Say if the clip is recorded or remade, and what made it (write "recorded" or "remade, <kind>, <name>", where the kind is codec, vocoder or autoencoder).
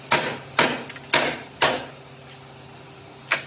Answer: recorded